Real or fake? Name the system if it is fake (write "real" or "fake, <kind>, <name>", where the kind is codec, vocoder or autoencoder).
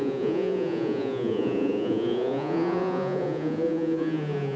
fake, vocoder, Vocos